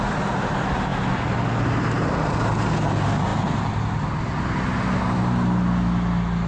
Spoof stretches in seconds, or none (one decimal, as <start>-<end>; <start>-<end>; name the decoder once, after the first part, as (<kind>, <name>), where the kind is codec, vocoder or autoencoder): none

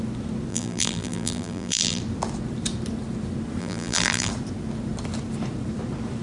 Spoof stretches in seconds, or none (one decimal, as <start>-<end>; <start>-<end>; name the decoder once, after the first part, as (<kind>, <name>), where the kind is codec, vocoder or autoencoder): 0.5-2.0 (vocoder, BigVGAN v2); 3.6-4.3

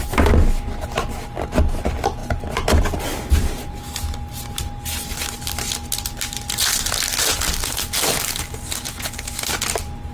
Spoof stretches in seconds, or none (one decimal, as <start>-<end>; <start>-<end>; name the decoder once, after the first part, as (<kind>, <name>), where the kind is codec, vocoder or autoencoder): 2.2-3.8 (vocoder, BigVGAN v2)

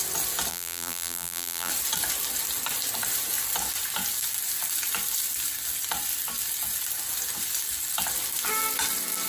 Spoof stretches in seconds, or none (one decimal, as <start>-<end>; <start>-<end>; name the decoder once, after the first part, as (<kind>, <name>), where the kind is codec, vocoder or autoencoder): 0.5-1.7 (vocoder, BigVGAN v2)

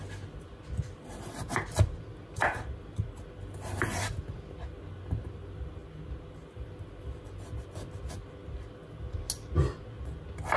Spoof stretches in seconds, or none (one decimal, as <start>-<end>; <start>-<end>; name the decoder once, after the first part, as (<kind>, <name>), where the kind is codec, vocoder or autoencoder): none